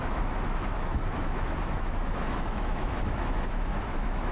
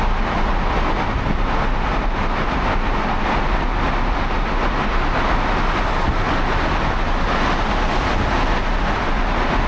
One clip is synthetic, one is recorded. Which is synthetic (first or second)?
first